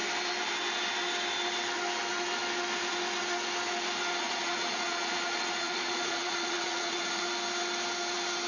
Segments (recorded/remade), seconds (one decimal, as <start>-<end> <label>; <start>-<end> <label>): 0.0-4.2 recorded; 4.2-7.2 remade; 7.2-8.5 recorded